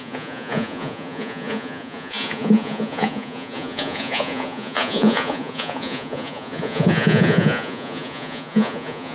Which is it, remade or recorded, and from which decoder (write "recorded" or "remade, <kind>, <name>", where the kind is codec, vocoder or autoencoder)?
remade, vocoder, Vocos